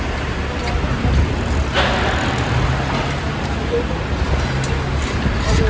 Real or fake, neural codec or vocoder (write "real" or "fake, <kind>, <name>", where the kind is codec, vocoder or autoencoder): real